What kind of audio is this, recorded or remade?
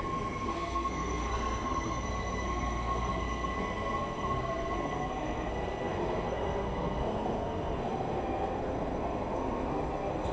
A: remade